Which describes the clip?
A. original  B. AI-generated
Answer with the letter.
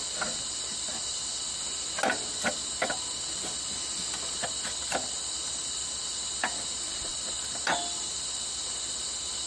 A